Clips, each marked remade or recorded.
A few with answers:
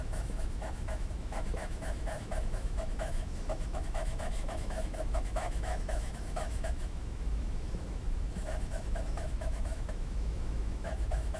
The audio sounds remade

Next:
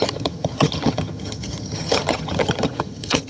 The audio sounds remade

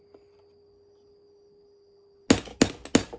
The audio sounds recorded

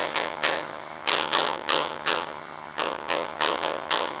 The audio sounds remade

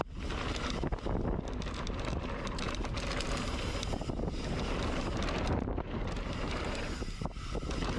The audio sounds recorded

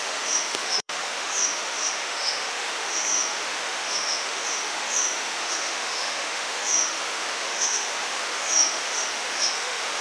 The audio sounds remade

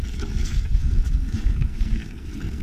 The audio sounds remade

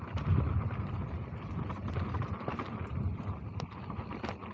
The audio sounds recorded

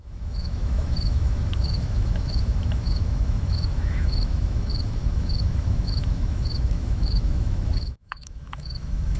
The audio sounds remade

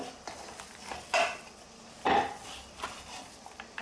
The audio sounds recorded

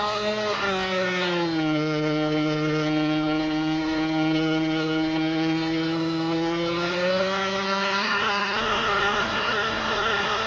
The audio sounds remade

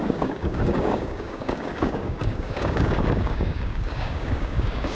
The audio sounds remade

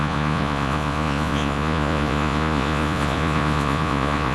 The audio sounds remade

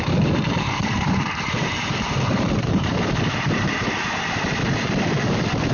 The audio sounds remade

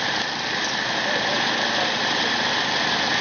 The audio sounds recorded